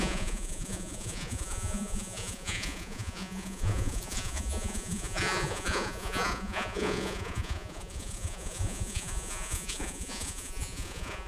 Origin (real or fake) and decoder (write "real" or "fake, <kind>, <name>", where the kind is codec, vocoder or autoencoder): fake, vocoder, Vocos